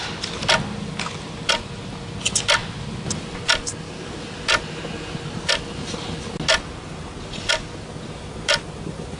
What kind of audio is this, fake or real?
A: real